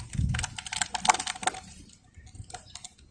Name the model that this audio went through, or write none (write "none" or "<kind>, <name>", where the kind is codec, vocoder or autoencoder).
none